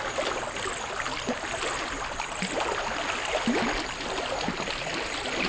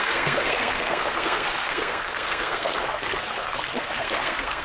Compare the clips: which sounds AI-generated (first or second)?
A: second